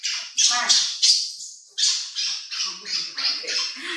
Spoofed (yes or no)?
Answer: no